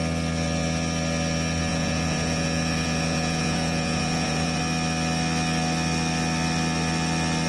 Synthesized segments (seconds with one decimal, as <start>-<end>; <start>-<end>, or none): 1.7-4.6